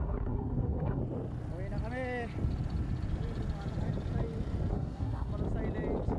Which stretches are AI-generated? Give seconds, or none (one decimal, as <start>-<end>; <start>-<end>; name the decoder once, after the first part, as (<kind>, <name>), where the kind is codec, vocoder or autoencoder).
0.0-1.0 (codec, SNAC); 4.7-5.3